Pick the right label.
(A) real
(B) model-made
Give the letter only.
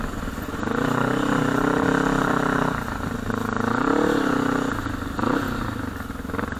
A